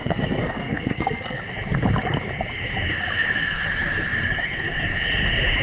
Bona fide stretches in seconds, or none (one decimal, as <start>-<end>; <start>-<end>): 1.4-5.6